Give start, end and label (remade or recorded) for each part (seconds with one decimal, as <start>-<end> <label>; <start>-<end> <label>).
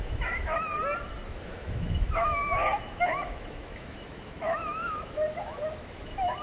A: 0.0-0.7 remade; 0.7-1.3 recorded; 1.3-6.4 remade